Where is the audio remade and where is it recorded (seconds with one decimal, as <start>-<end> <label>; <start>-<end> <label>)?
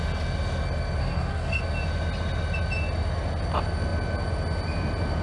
0.0-1.0 recorded; 1.0-1.6 remade; 1.6-5.2 recorded